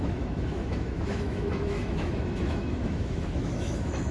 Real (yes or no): no